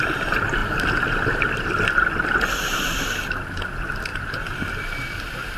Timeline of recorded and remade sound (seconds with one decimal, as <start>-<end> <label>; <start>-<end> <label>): 0.0-5.6 recorded